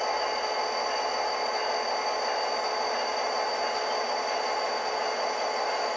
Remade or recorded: recorded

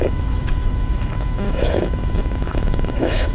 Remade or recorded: remade